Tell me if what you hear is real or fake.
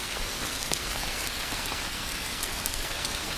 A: fake